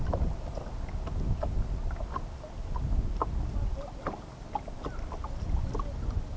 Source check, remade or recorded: recorded